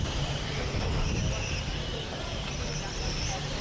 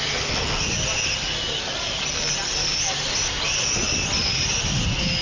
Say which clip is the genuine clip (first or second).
second